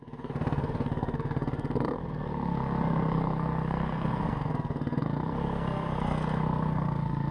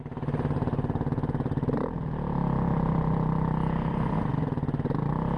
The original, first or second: second